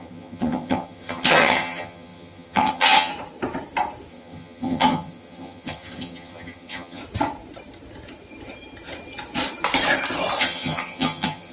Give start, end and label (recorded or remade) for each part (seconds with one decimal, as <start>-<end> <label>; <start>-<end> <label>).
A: 0.0-3.1 remade; 3.1-4.1 recorded; 4.1-7.0 remade; 7.0-10.4 recorded; 10.4-11.5 remade